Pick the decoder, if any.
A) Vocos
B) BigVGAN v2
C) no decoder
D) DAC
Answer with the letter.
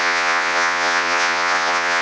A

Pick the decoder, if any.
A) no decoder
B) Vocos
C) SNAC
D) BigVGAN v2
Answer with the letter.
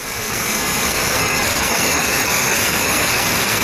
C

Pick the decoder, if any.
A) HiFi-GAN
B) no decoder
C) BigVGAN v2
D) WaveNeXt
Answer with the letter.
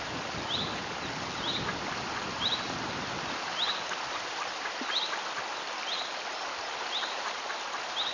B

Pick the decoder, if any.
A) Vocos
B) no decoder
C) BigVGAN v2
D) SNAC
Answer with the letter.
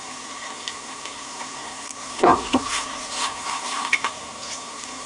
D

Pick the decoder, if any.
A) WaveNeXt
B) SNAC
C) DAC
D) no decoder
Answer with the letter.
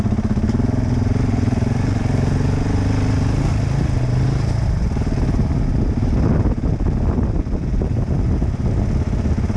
D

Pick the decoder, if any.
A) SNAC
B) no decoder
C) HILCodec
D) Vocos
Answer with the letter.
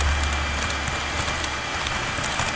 B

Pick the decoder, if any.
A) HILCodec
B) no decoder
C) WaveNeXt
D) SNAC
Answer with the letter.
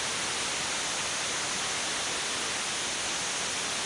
B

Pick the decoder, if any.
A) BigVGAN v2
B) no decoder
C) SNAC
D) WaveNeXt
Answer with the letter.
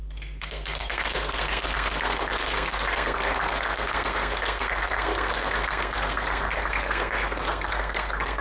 C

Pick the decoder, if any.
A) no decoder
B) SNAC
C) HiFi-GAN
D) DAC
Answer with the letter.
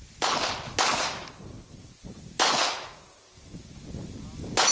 A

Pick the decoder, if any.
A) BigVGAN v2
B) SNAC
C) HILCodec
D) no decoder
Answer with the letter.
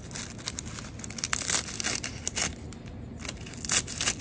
D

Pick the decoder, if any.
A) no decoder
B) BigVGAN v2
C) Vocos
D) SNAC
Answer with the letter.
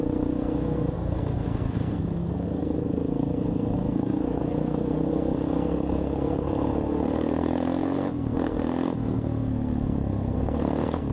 D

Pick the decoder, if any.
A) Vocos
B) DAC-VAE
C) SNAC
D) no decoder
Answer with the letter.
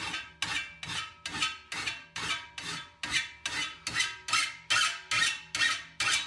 D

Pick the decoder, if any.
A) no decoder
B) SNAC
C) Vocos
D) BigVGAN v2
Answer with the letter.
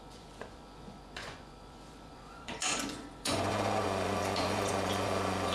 C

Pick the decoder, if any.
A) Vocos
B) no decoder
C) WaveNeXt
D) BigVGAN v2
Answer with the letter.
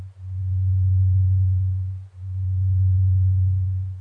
A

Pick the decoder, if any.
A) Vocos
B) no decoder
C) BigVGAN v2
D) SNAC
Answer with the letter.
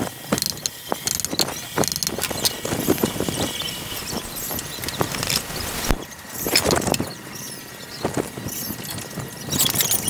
B